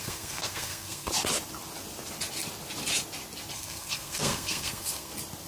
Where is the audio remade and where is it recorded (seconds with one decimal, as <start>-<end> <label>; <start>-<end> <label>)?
0.0-1.1 remade; 1.1-3.5 recorded; 3.5-5.1 remade; 5.1-5.5 recorded

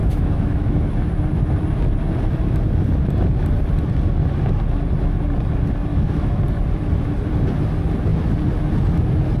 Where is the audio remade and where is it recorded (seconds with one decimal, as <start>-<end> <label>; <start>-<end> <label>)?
0.0-0.9 remade; 0.9-5.9 recorded; 5.9-6.4 remade; 6.4-9.4 recorded

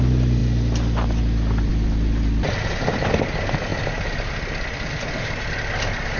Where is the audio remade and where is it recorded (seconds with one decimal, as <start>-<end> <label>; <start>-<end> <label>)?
0.0-6.2 recorded

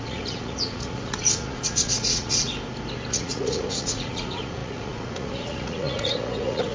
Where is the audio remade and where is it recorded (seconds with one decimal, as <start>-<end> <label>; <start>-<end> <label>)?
0.0-2.5 remade; 2.5-3.1 recorded; 3.1-6.7 remade